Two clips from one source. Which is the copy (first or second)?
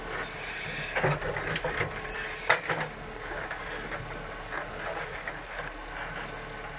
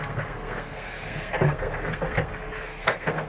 second